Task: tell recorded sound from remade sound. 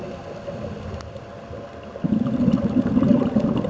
recorded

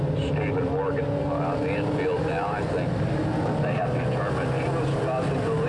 recorded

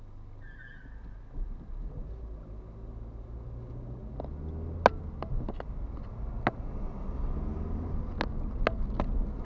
recorded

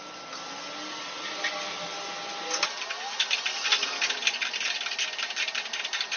recorded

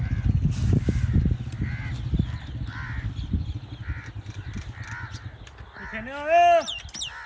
recorded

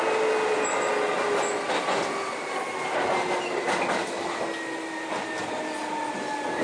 recorded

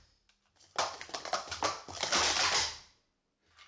recorded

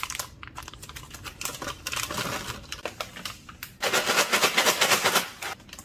recorded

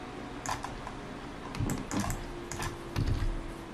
recorded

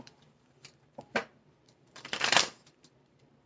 remade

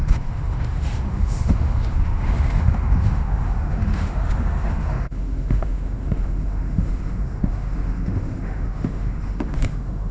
remade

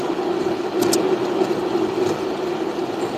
recorded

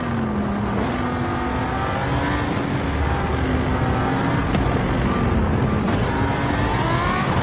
recorded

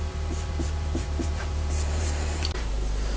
remade